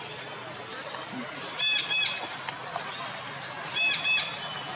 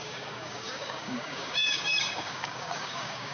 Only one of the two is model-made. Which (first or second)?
second